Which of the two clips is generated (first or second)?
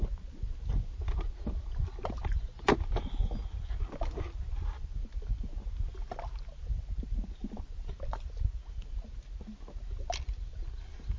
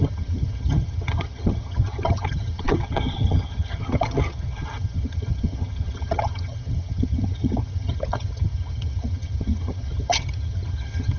second